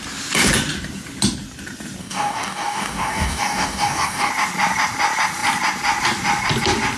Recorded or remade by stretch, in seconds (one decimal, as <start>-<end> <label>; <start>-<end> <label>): 0.0-2.0 recorded; 2.0-4.3 remade; 4.3-7.0 recorded